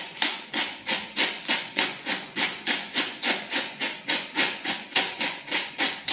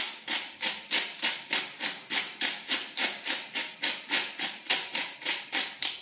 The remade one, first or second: first